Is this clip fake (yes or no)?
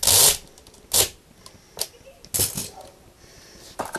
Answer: no